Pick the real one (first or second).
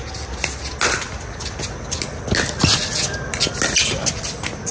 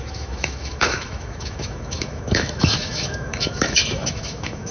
first